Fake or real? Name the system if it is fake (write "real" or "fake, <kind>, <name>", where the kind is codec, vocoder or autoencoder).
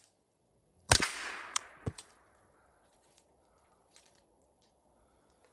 fake, vocoder, Vocos